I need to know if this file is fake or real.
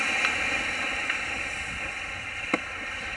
real